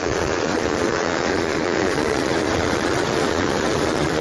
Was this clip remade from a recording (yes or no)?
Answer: yes